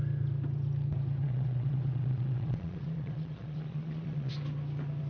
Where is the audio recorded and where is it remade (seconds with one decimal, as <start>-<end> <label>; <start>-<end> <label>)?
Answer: 0.0-1.2 recorded; 1.2-4.3 remade; 4.3-5.1 recorded